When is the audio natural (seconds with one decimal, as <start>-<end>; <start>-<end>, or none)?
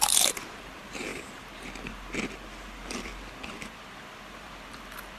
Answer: none